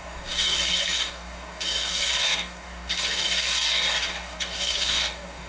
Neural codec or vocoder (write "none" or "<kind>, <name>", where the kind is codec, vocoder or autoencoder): codec, DAC